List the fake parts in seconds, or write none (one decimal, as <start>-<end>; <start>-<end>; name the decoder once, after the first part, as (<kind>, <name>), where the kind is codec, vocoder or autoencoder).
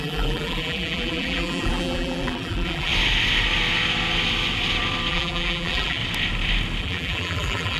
0.0-2.9 (vocoder, BigVGAN v2); 5.1-6.0; 6.8-7.8